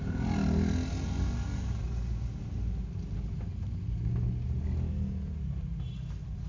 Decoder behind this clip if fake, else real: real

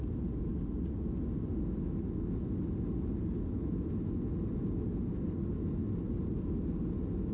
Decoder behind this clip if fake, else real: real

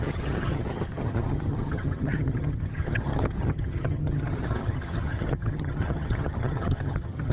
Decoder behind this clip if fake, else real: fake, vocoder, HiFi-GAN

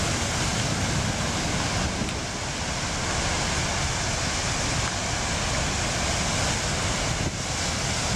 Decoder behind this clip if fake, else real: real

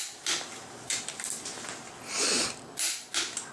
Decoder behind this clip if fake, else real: real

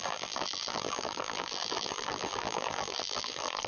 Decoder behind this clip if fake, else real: fake, vocoder, BigVGAN v2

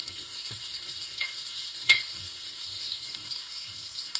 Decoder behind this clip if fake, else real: fake, codec, SNAC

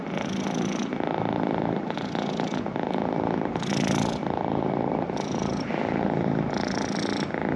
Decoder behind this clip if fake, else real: real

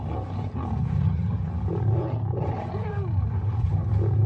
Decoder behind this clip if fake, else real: real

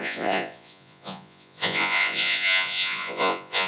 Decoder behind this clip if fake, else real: fake, vocoder, Vocos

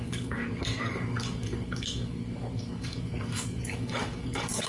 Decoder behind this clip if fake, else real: fake, codec, DAC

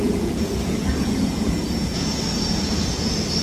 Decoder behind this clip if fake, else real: fake, vocoder, Vocos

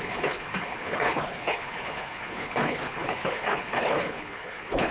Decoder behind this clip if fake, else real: fake, codec, HILCodec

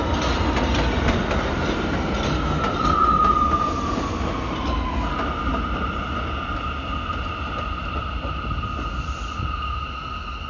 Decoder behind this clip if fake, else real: real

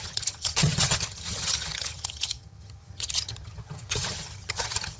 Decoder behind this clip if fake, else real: fake, vocoder, HiFi-GAN